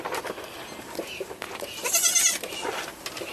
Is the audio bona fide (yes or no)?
yes